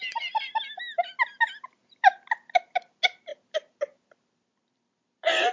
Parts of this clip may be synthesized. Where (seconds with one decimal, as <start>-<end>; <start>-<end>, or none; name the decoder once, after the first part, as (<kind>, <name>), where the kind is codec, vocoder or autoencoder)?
none